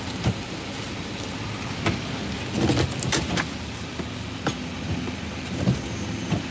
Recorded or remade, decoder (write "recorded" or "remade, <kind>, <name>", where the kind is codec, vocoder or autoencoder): recorded